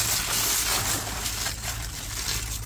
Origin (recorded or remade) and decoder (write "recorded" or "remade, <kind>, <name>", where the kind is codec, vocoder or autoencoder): recorded